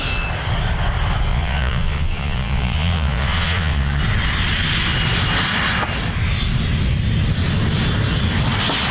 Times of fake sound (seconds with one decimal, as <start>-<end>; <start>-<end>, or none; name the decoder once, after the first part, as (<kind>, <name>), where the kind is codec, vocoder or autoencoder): 1.3-4.0 (vocoder, Vocos)